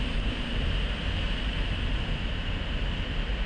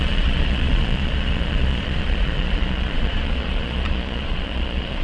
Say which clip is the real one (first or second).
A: first